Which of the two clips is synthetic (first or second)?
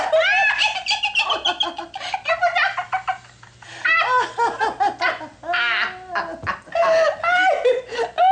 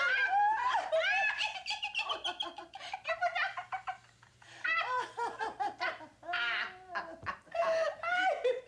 second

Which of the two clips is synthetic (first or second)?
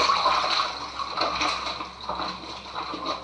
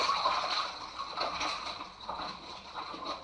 second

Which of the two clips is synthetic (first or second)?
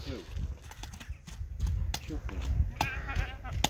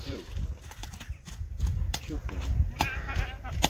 second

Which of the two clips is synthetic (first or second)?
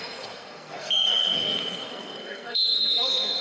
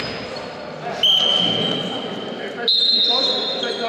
first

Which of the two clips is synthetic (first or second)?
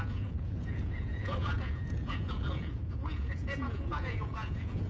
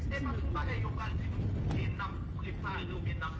first